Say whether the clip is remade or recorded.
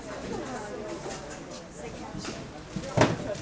recorded